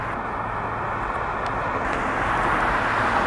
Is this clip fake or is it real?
real